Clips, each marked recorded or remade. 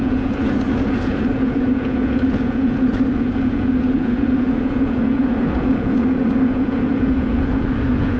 remade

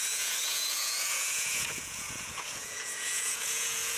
remade